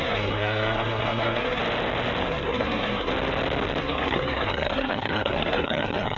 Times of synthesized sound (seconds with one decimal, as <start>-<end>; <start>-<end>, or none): 0.0-1.6; 2.2-3.1; 3.8-6.2